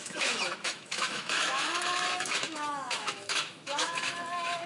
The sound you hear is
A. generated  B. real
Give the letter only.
A